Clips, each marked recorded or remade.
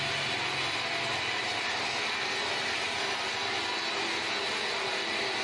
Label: recorded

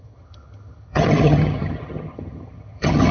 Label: remade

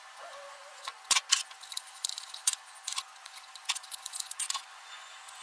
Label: remade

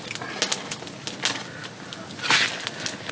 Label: recorded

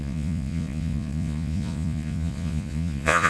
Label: remade